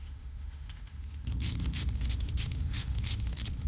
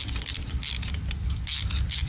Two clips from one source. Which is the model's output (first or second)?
first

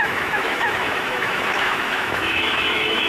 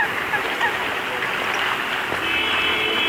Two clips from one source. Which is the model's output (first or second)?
first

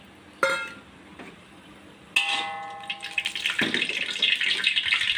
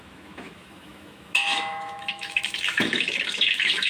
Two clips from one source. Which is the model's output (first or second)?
second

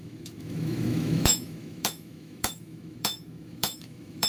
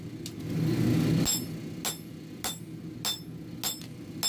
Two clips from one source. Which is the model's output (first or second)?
first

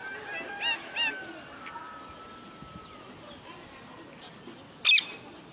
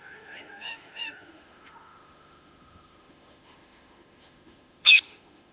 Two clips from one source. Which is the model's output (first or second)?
second